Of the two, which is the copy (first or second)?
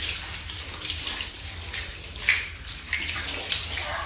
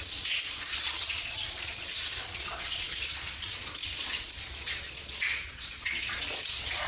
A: second